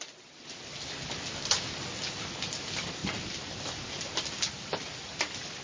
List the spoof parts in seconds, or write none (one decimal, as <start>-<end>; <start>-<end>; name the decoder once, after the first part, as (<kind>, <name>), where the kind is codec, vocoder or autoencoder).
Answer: none